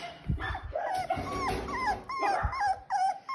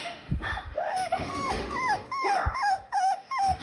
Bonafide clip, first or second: first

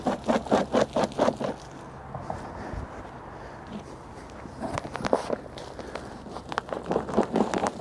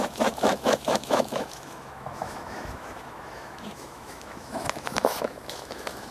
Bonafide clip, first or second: first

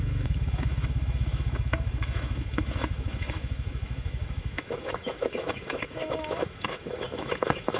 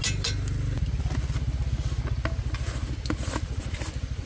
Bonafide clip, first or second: second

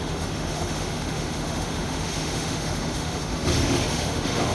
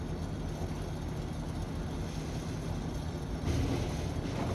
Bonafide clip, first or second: second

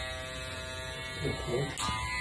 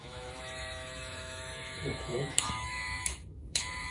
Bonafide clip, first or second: first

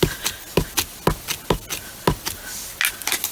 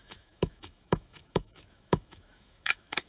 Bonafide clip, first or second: first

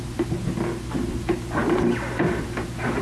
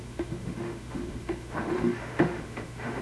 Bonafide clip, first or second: first